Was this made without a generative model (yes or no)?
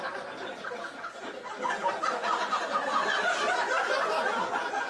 yes